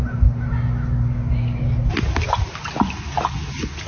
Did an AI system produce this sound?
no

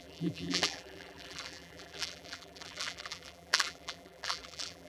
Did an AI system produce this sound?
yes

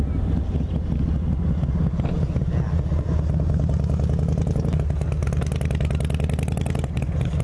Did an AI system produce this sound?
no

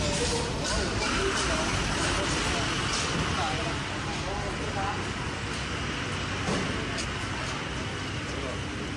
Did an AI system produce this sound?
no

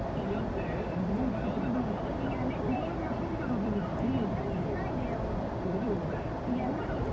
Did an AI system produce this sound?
yes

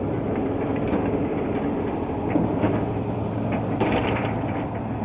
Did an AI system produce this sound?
yes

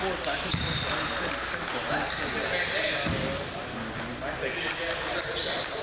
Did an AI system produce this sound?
no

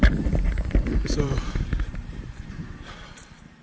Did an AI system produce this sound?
yes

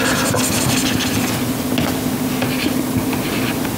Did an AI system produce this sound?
no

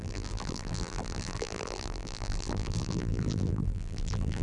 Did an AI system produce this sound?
yes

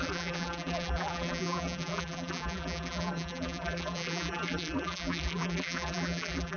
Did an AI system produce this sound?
yes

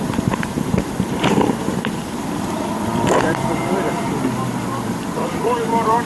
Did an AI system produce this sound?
yes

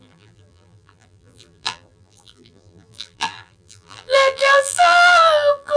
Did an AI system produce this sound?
yes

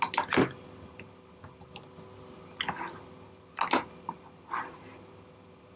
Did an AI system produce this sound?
no